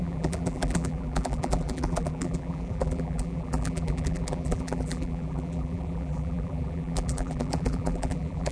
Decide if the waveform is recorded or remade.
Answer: remade